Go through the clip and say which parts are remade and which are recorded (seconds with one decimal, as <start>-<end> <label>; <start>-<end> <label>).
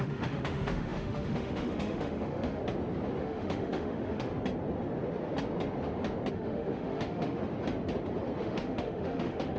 0.0-2.6 remade; 2.6-3.2 recorded; 3.2-4.3 remade; 4.3-6.3 recorded; 6.3-7.4 remade; 7.4-8.4 recorded; 8.4-9.6 remade